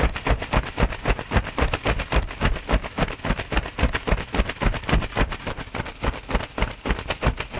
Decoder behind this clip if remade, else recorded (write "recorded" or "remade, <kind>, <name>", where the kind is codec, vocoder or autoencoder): recorded